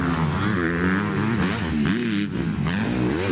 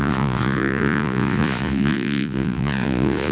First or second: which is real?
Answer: first